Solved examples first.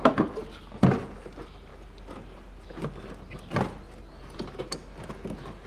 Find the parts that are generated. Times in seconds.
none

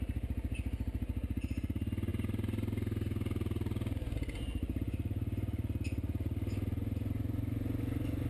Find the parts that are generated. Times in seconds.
none

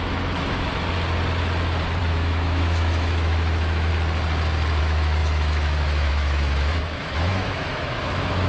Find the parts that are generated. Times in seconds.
0.0-0.7 (autoencoder, DAC-VAE); 2.0-3.9; 4.8-8.5